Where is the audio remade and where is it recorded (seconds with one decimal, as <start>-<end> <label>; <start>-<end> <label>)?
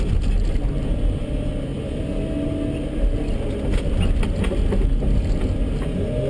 0.0-6.3 recorded